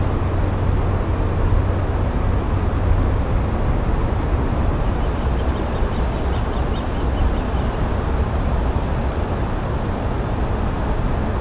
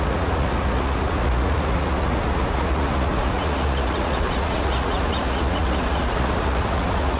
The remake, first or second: second